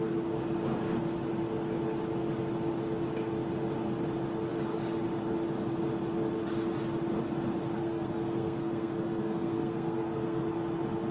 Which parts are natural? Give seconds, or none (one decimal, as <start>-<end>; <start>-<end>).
0.0-7.8; 10.4-11.1